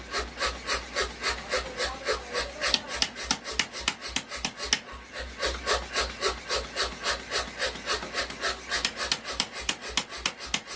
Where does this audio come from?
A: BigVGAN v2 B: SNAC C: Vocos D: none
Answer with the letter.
D